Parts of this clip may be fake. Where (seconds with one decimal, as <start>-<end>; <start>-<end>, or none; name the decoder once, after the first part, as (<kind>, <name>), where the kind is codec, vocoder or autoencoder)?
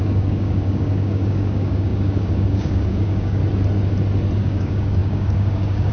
0.0-3.4 (codec, DAC); 4.4-5.9